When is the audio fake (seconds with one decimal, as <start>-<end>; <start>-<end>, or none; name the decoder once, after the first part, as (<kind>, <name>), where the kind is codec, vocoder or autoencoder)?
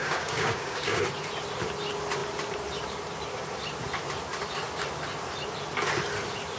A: 0.0-1.0 (codec, DAC)